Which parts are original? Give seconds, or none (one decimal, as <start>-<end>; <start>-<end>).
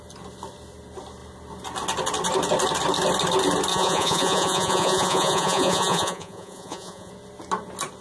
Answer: 0.0-3.7; 7.1-8.0